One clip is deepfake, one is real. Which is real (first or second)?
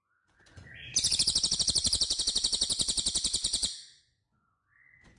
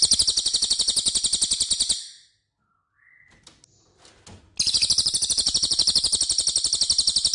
second